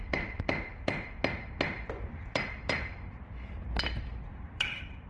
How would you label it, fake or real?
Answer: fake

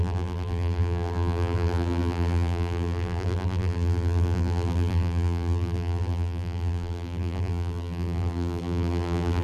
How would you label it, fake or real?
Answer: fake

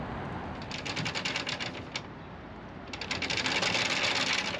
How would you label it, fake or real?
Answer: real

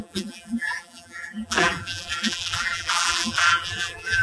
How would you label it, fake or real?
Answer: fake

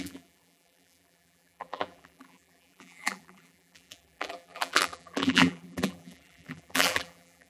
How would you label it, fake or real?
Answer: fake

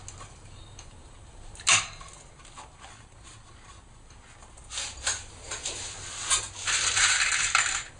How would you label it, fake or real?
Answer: real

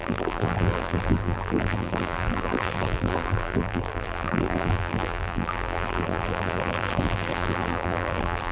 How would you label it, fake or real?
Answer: fake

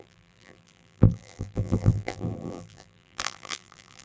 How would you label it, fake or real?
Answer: fake